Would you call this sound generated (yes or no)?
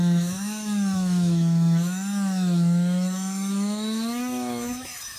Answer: yes